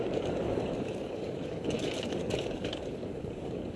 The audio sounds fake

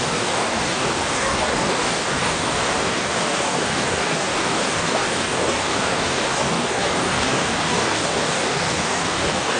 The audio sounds fake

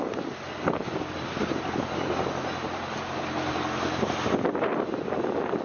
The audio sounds real